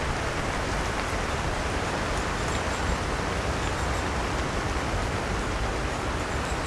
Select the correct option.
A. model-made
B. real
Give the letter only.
B